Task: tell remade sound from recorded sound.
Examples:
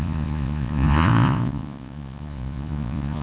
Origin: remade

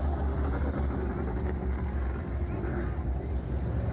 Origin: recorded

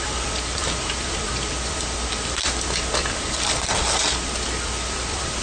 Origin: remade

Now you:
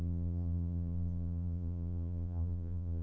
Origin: remade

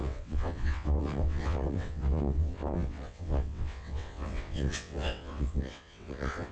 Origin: remade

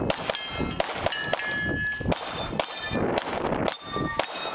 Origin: recorded